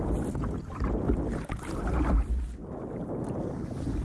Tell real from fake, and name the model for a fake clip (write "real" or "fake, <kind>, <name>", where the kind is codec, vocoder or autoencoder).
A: real